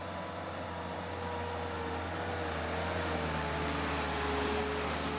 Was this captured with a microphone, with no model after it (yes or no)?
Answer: yes